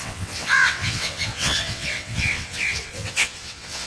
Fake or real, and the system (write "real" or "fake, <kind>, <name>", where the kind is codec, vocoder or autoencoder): fake, vocoder, WaveNeXt